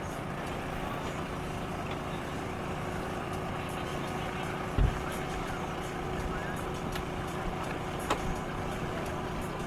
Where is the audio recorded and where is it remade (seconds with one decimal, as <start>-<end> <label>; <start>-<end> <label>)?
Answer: 0.0-3.9 remade; 3.9-4.9 recorded; 4.9-9.7 remade